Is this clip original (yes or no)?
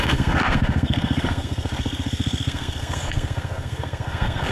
no